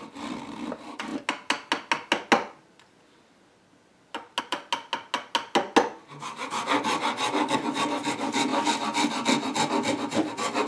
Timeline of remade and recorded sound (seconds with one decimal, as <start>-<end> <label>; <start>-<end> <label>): 0.0-10.7 recorded